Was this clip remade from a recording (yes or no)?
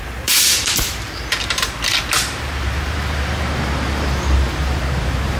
yes